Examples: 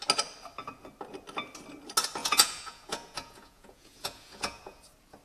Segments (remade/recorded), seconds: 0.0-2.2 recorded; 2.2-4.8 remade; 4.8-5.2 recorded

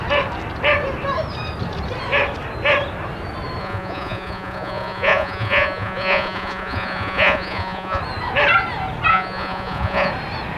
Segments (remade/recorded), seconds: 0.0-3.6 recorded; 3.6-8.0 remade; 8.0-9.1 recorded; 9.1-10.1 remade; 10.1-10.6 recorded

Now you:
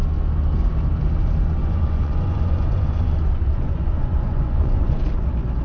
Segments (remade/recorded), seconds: 0.0-1.6 recorded; 1.6-5.0 remade; 5.0-5.6 recorded

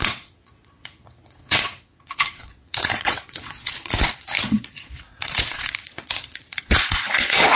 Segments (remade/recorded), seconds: 0.0-7.5 remade

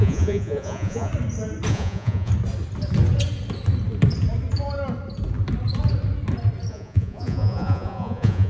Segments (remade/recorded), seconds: 0.0-1.1 remade; 1.1-1.7 recorded; 1.7-2.3 remade; 2.3-6.7 recorded; 6.7-8.5 remade

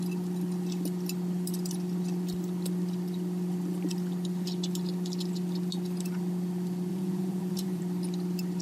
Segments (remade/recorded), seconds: 0.0-6.9 recorded; 6.9-7.8 remade; 7.8-8.6 recorded

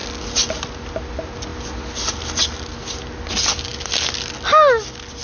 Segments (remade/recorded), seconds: 0.0-5.2 recorded